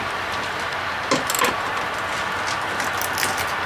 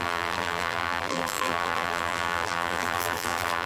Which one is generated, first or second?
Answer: second